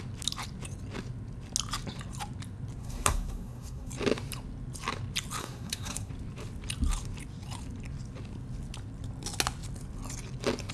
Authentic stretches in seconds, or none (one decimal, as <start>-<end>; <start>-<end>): 0.0-2.8; 3.9-5.4; 6.1-10.7